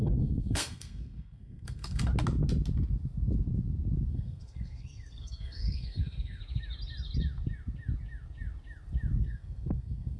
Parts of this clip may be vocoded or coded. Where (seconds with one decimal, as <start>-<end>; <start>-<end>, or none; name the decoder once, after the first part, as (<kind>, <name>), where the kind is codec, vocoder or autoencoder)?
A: 0.0-2.1 (codec, SNAC); 4.1-6.4; 9.2-10.2